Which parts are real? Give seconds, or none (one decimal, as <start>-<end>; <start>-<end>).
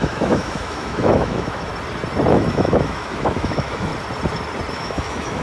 1.7-2.3; 3.9-4.7